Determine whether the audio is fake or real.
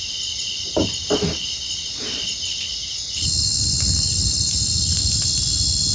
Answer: real